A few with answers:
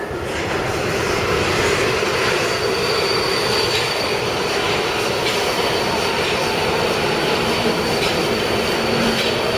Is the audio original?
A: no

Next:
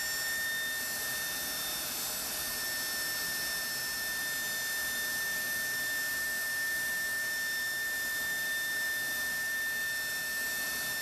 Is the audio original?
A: yes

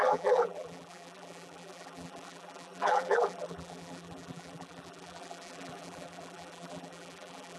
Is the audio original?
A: no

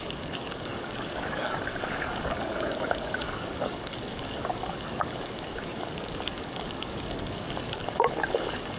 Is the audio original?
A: no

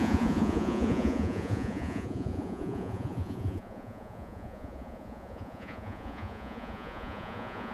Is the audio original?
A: no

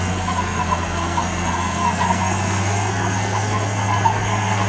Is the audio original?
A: no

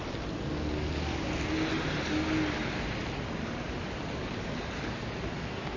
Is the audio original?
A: yes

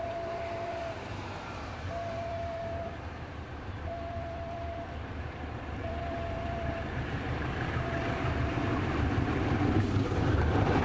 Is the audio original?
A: no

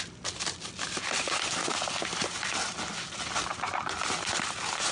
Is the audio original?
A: yes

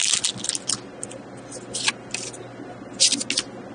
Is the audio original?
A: yes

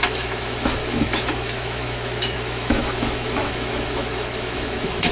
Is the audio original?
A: no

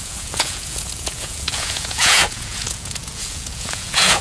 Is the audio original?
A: no